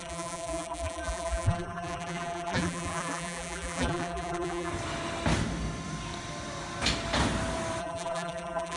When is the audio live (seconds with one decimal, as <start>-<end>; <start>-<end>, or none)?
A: 4.7-7.8